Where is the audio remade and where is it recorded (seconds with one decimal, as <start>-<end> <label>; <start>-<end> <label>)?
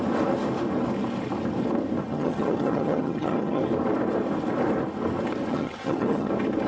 0.0-2.1 recorded; 2.1-3.6 remade; 3.6-5.5 recorded; 5.5-6.3 remade; 6.3-6.7 recorded